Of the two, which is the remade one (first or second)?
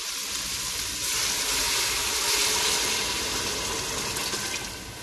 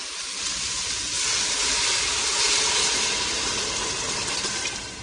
second